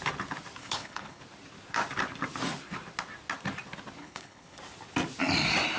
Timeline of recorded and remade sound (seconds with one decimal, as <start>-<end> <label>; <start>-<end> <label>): 0.0-0.6 recorded; 0.6-1.2 remade; 1.2-4.0 recorded; 4.0-4.6 remade; 4.6-5.8 recorded